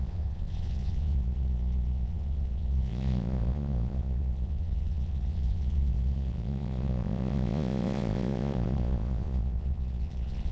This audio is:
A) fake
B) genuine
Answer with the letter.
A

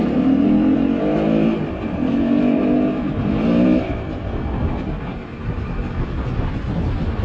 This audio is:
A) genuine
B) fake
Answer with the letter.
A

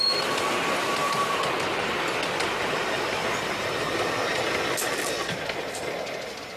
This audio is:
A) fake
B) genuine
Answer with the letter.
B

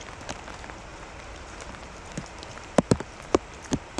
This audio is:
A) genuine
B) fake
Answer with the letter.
B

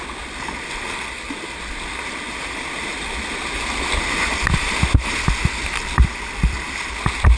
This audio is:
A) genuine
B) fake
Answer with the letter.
A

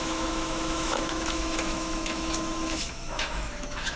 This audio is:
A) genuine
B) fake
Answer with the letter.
B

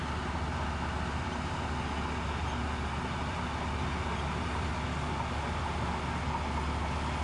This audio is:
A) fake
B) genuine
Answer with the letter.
B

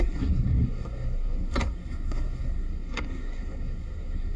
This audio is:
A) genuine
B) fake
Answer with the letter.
B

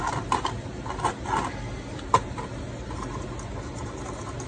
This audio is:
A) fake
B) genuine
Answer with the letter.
B